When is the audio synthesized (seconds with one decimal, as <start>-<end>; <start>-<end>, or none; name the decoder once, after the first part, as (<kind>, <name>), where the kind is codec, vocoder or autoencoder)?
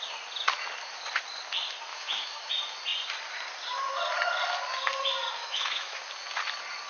1.9-2.5 (autoencoder, DAC-VAE); 5.4-6.0